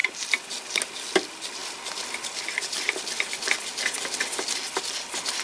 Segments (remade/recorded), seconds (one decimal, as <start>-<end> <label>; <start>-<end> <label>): 0.0-0.5 remade; 0.5-5.4 recorded